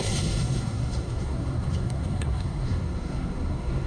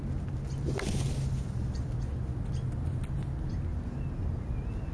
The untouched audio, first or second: second